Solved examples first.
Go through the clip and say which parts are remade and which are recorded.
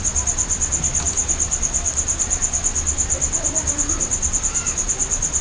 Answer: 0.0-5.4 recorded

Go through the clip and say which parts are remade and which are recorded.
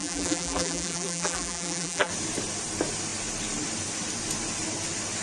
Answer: 0.0-2.1 remade; 2.1-5.2 recorded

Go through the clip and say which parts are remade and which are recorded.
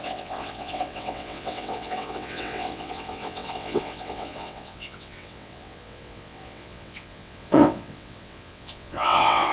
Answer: 0.0-9.5 remade